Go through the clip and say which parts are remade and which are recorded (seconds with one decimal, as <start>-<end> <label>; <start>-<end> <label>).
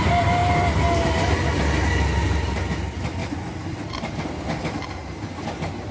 0.0-5.9 recorded